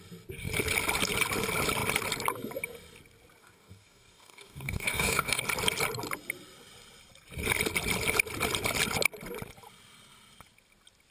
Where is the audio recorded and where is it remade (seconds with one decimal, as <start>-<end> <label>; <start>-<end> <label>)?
0.0-3.4 recorded; 3.4-5.4 remade; 5.4-11.1 recorded